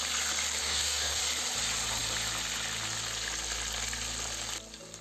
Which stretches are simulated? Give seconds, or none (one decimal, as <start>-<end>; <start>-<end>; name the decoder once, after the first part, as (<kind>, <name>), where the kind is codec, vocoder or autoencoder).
0.6-1.2 (codec, DAC)